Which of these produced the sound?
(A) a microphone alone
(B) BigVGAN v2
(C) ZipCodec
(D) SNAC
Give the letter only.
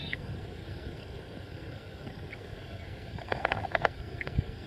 D